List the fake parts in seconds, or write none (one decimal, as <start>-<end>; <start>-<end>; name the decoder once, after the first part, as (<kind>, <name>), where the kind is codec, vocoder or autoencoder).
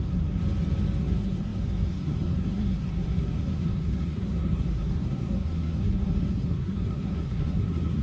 0.0-0.4 (codec, SNAC); 1.0-8.0